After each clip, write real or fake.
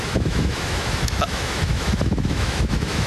fake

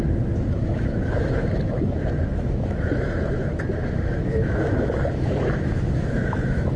fake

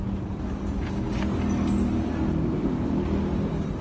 real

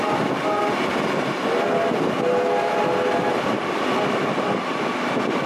real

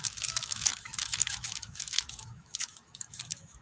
fake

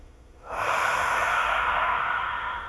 fake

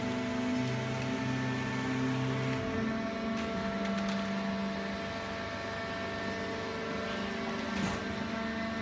real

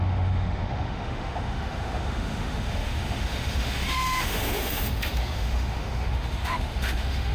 fake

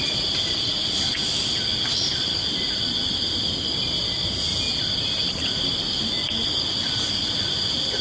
real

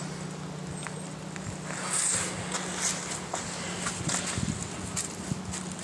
real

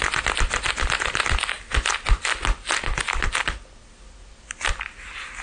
real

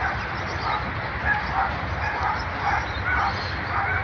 real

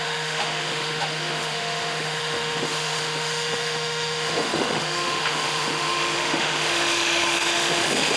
fake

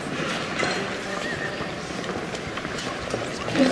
real